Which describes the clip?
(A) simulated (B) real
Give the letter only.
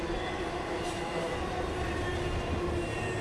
B